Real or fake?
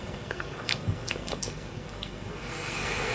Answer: fake